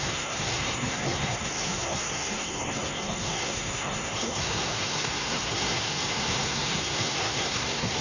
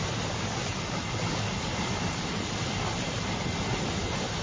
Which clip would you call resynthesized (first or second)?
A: first